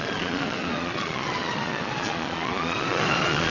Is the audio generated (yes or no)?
yes